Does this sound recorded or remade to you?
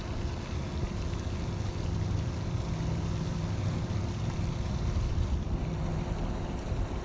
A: recorded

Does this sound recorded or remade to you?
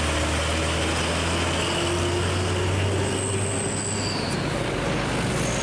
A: recorded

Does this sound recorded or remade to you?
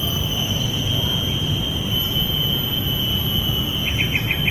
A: recorded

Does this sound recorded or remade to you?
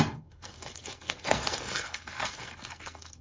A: remade